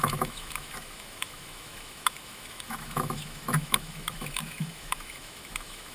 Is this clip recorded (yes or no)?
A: no